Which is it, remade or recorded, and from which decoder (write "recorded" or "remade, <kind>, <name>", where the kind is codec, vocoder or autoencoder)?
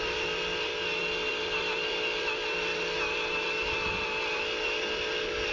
recorded